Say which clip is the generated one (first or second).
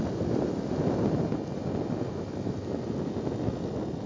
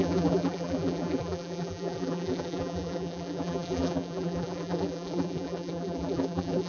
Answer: second